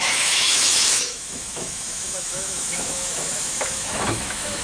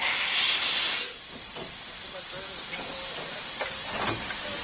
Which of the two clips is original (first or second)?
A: second